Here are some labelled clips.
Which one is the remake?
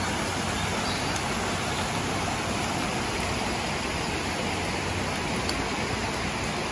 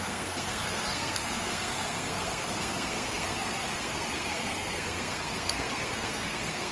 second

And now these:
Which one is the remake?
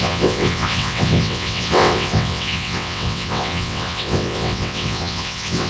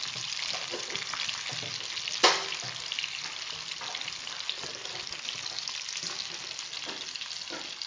first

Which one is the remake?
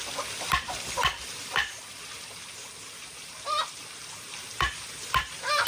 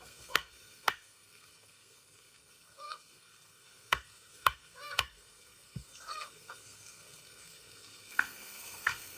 second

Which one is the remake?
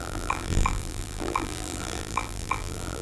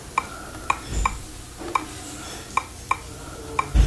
first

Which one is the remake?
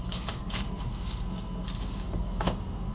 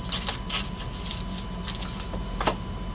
first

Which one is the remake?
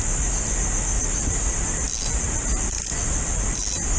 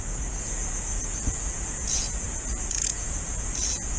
second